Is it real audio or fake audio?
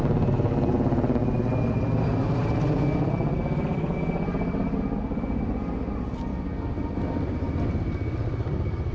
real